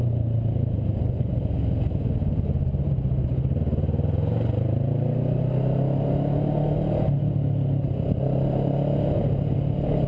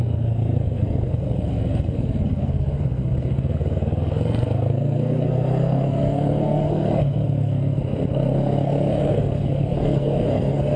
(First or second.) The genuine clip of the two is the first